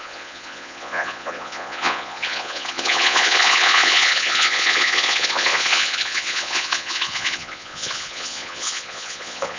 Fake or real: fake